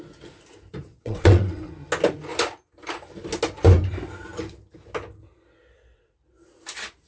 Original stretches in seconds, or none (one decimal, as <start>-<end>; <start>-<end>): 0.0-0.9; 1.7-7.1